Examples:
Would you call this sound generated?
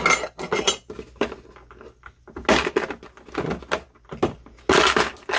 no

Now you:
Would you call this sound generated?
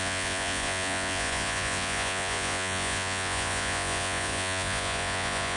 yes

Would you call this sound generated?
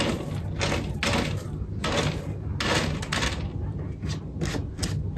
no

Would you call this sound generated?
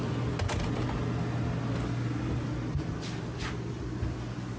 no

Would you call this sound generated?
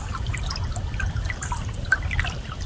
no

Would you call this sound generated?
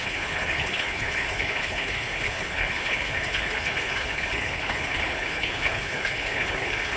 yes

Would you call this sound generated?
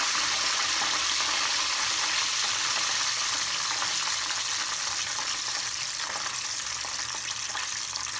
no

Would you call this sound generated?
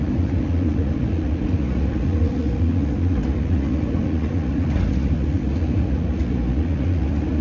yes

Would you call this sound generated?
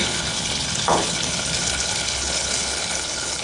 yes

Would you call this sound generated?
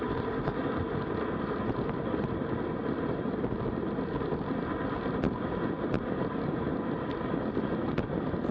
no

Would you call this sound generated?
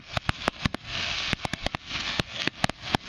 yes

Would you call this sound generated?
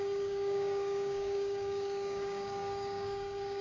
yes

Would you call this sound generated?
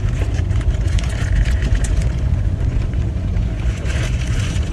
yes